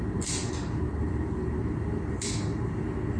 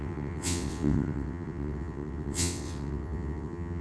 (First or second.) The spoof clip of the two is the second